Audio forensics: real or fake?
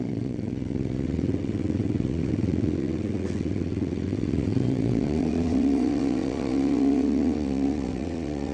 fake